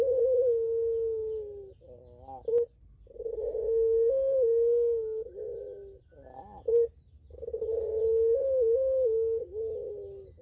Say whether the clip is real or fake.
real